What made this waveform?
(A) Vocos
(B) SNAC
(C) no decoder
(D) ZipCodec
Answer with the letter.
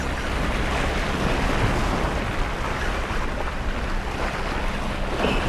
C